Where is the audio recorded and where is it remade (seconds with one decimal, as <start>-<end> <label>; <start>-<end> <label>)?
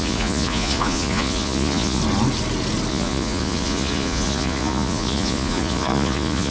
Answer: 0.0-2.0 remade; 2.0-2.9 recorded; 2.9-6.5 remade